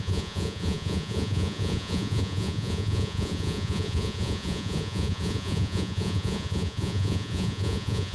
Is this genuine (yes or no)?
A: no